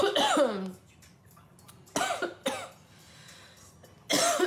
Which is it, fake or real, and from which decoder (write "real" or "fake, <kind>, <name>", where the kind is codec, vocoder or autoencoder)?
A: real